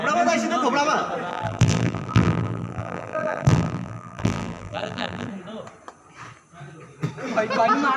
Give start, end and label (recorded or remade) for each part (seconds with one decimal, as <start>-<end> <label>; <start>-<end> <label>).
0.0-1.3 recorded; 1.3-5.3 remade; 5.3-8.0 recorded